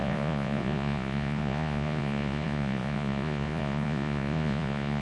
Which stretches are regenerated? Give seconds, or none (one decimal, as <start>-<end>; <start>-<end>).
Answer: 0.0-5.0